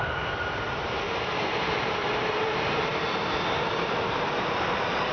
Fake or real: fake